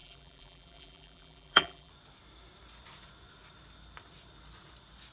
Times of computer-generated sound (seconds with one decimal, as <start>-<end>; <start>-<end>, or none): 0.0-1.9